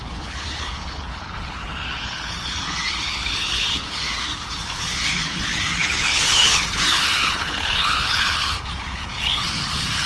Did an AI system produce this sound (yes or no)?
yes